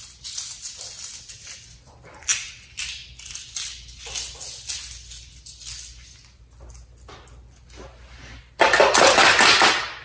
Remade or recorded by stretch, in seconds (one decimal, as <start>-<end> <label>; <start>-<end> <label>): 0.0-10.0 recorded